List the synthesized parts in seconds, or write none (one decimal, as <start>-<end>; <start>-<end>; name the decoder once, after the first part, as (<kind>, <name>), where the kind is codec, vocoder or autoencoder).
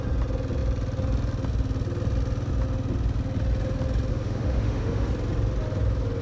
4.1-5.1 (autoencoder, DAC-VAE)